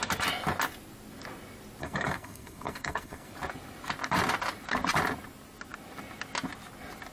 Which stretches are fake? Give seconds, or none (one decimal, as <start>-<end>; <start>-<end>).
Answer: 1.8-3.3